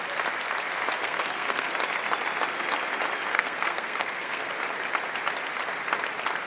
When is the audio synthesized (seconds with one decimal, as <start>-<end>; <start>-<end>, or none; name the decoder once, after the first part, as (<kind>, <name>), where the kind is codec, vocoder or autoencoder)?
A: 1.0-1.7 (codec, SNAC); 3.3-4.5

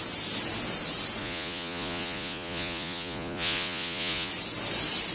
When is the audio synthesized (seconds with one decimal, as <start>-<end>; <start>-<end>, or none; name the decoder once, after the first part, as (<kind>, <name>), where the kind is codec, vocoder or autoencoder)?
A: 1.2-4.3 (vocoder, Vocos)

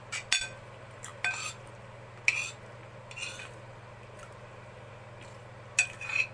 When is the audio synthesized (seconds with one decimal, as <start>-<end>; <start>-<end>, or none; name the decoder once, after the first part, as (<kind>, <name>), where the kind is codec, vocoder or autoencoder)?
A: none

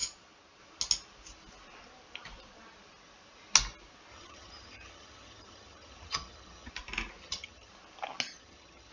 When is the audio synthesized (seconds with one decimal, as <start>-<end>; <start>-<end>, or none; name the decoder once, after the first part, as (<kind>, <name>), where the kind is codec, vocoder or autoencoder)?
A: 4.1-6.7 (vocoder, HiFi-GAN); 7.2-7.7; 8.3-8.9

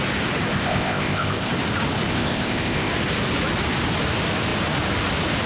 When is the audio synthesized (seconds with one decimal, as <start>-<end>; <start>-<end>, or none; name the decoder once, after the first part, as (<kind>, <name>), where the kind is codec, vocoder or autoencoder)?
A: 0.5-1.5 (codec, ZipCodec); 2.1-2.9

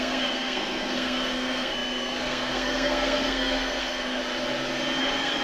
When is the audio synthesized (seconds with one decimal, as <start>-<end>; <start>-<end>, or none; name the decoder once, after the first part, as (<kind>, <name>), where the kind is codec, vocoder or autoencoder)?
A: 0.0-4.2 (codec, SNAC); 5.0-5.4